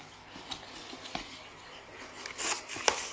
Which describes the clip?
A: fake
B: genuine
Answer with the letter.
B